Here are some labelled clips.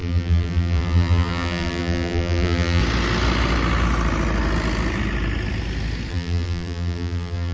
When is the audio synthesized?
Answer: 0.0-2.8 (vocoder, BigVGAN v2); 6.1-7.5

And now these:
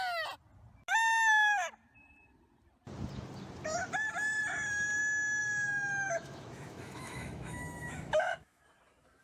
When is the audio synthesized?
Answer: 5.4-8.6 (autoencoder, DAC-VAE)

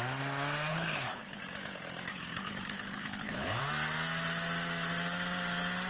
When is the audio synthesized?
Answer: 0.7-1.4 (codec, HILCodec); 2.1-3.6